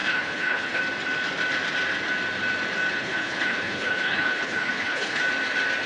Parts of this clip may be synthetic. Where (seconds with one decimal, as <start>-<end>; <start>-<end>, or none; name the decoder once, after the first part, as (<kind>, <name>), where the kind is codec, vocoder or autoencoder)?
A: 0.0-0.8 (codec, HILCodec); 2.9-5.2